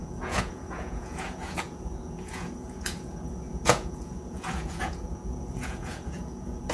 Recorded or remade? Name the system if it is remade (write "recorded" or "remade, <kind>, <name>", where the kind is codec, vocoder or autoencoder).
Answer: remade, vocoder, Vocos